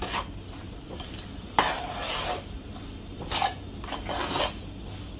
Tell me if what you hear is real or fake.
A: real